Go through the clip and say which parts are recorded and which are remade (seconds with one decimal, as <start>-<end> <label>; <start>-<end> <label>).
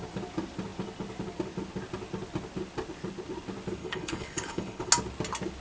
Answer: 0.0-3.8 recorded; 3.8-4.9 remade; 4.9-5.6 recorded